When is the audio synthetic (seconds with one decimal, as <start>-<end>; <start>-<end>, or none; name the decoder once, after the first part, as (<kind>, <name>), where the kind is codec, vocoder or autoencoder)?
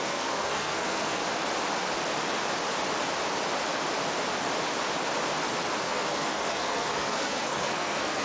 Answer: 0.0-1.2 (codec, SNAC); 5.8-8.2